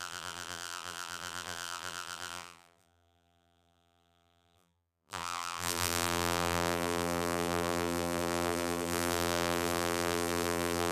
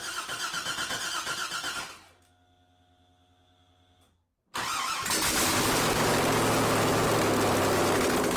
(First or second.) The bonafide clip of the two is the second